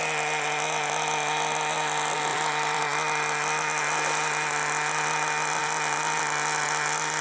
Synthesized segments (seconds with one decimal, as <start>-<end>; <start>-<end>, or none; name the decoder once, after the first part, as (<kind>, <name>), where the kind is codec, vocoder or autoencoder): 2.3-2.8 (vocoder, BigVGAN v2); 5.6-6.2